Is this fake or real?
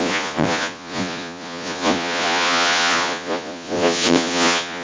fake